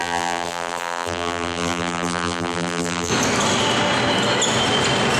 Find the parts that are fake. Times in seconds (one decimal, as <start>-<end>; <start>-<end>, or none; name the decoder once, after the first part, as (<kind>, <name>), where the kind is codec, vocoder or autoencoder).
0.0-3.1 (vocoder, BigVGAN v2)